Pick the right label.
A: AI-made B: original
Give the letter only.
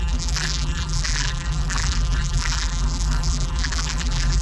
A